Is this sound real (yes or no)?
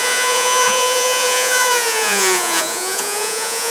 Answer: no